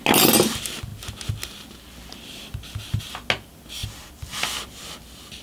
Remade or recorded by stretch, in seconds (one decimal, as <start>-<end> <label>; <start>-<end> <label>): 0.0-5.4 recorded